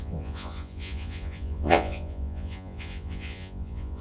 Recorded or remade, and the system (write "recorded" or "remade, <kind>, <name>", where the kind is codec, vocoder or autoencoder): remade, vocoder, Vocos